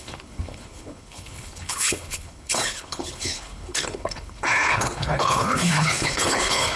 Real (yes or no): no